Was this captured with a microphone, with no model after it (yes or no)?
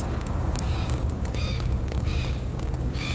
no